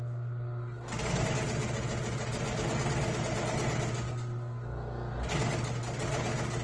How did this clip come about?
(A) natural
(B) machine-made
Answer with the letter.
A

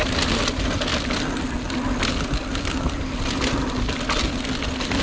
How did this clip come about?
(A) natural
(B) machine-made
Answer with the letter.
A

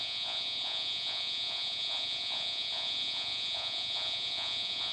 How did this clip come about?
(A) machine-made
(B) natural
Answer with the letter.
A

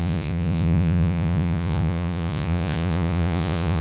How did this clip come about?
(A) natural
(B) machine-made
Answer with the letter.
B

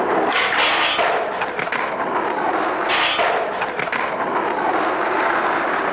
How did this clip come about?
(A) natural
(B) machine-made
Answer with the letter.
A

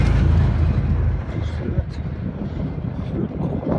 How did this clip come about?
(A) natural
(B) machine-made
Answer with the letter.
A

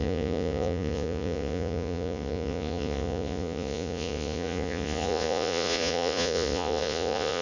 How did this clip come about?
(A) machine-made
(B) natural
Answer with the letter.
A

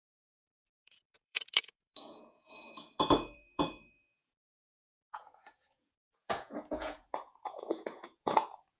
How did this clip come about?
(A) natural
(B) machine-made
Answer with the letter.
B